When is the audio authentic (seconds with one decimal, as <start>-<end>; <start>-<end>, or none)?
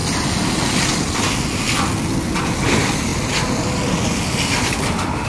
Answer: 0.0-5.3